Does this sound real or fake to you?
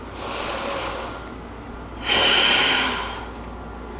real